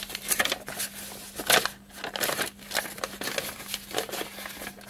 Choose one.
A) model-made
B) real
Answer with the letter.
B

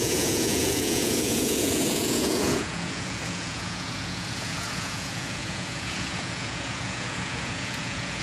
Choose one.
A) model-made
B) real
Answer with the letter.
A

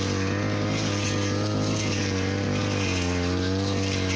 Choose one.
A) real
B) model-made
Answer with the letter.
A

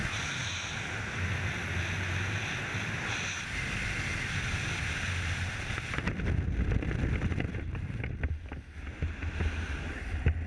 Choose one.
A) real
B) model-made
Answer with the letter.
A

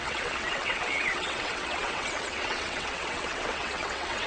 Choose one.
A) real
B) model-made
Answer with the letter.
B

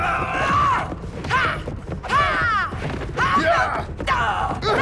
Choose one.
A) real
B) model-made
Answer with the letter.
A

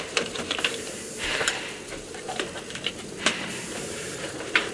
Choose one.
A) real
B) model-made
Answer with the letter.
B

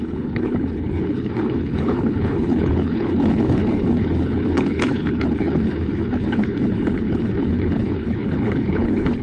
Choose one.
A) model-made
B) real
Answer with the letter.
A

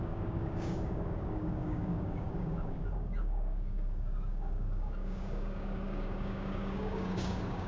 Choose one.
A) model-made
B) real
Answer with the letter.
A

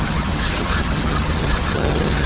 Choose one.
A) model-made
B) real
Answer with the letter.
A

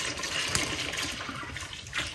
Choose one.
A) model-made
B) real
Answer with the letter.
B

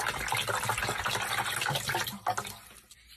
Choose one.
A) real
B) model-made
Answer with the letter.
A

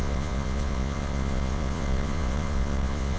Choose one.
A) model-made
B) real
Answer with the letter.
A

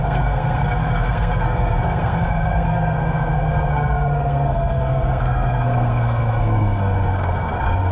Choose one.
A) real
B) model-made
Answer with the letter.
B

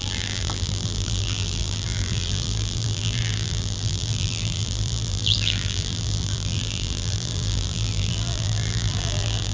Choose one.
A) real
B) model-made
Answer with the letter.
B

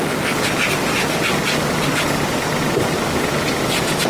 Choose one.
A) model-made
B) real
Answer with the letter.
B